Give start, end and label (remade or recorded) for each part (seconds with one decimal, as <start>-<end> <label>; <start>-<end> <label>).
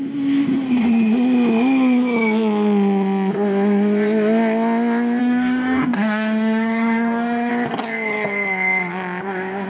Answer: 0.0-5.2 recorded; 5.2-7.5 remade; 7.5-9.7 recorded